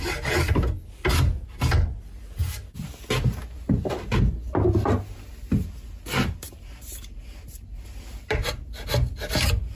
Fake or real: real